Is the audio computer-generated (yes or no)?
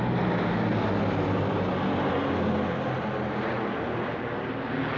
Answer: no